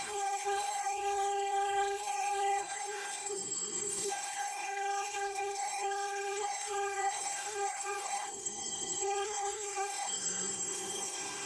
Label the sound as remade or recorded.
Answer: remade